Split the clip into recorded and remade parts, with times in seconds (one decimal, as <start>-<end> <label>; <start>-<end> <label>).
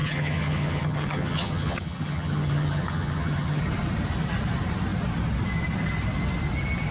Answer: 0.0-3.6 remade; 3.6-6.9 recorded